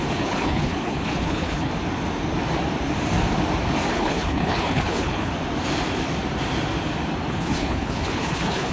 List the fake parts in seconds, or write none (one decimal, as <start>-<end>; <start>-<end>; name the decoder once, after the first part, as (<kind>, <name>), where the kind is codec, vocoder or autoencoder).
0.0-1.7 (codec, HILCodec); 3.9-5.3; 7.3-8.7